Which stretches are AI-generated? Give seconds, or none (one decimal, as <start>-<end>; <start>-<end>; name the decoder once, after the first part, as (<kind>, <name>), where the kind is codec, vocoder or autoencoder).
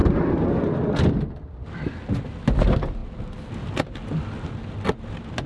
none